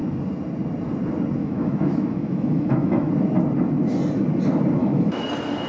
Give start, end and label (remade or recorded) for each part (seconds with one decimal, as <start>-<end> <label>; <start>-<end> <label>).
0.0-1.4 recorded; 1.4-3.1 remade; 3.1-4.8 recorded; 4.8-5.3 remade; 5.3-5.7 recorded